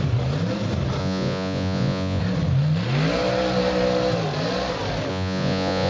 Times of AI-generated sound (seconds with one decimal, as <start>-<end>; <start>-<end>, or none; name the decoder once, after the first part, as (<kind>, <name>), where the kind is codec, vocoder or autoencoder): 1.0-2.2 (vocoder, Vocos); 5.1-5.9